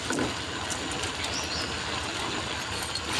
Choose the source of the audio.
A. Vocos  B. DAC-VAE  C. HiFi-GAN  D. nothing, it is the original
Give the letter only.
D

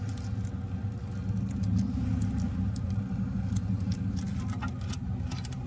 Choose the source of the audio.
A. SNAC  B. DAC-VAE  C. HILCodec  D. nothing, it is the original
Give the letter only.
D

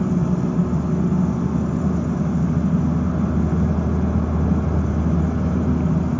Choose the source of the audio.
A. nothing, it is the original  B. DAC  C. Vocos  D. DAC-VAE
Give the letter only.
A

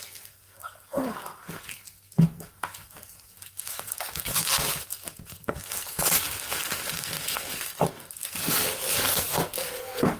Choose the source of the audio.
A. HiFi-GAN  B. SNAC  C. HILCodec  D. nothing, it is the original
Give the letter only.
B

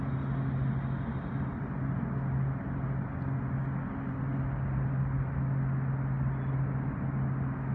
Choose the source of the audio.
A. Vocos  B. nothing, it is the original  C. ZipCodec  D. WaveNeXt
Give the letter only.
B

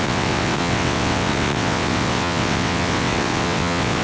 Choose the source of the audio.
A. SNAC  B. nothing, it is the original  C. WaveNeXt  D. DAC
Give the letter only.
C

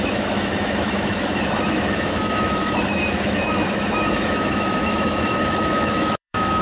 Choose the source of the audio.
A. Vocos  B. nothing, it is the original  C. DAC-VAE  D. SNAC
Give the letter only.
C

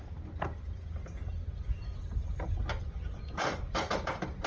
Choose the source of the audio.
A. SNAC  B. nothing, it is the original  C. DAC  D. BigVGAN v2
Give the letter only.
D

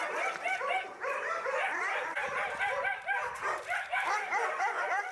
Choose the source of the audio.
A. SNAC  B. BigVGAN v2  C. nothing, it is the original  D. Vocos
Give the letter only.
B